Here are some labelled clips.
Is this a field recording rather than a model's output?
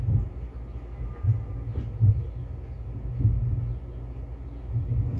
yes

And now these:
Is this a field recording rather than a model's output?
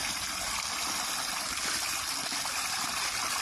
yes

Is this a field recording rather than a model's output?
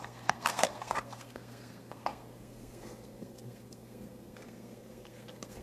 no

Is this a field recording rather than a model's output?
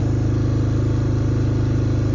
yes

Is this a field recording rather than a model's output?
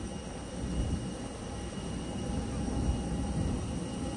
yes